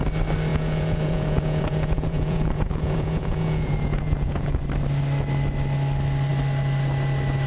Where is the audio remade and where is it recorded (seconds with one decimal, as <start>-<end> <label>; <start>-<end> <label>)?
0.0-0.5 recorded; 0.5-4.6 remade; 4.6-7.5 recorded